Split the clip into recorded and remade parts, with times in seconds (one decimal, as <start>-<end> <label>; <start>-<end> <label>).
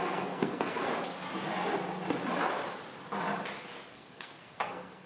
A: 0.0-0.9 remade; 0.9-3.9 recorded; 3.9-5.1 remade